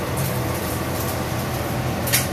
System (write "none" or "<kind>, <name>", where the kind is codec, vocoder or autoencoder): vocoder, BigVGAN v2